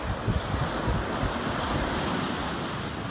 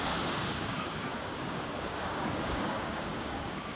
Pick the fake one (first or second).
second